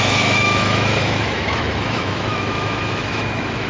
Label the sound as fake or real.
fake